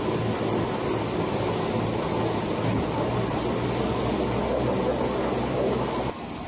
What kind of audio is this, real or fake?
real